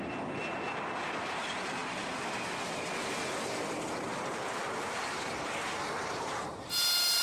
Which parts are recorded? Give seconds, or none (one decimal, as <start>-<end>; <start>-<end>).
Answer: 0.0-7.2